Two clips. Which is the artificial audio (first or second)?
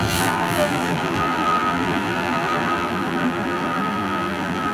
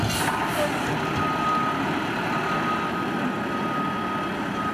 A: first